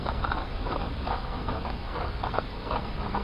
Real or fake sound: fake